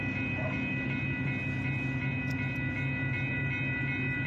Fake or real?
real